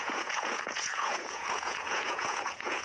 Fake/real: fake